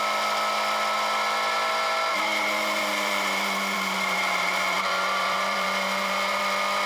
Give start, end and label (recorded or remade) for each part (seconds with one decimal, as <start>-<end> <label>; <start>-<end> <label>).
0.0-2.3 recorded; 2.3-6.4 remade; 6.4-6.9 recorded